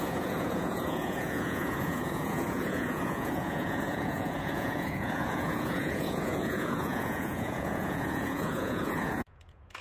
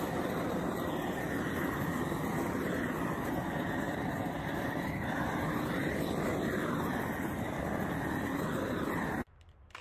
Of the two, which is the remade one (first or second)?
first